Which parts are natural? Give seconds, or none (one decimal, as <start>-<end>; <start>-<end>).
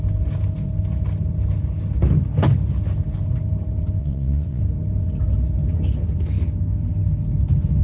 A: 0.0-4.0; 4.6-7.8